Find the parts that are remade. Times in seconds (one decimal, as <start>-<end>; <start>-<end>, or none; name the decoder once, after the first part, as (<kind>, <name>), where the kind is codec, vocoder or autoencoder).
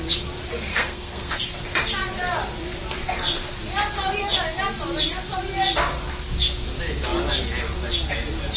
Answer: 0.7-1.4 (codec, SNAC)